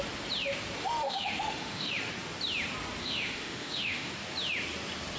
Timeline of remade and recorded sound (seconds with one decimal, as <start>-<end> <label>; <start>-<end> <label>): 0.0-0.8 recorded; 0.8-1.9 remade; 1.9-3.0 recorded; 3.0-4.1 remade; 4.1-5.2 recorded